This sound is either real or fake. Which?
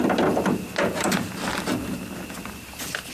real